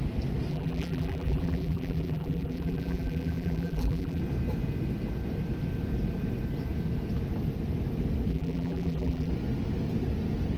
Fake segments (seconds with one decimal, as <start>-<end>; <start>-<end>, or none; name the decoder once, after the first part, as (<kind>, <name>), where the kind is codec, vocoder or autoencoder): 0.5-4.2 (vocoder, BigVGAN v2); 8.3-9.3